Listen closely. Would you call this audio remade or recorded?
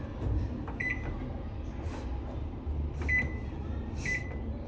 recorded